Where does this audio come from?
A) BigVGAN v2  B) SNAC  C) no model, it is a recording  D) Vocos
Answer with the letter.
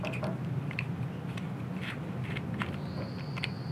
C